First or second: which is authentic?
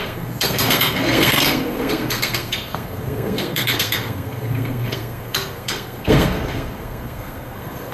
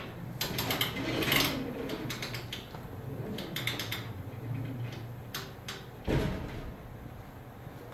second